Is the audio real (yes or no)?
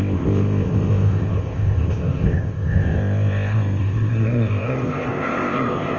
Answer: no